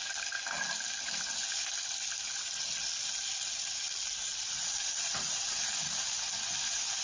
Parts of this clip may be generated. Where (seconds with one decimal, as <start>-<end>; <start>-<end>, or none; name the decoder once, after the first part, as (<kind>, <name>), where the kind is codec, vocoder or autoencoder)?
none